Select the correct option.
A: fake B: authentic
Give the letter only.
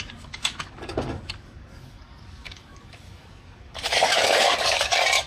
A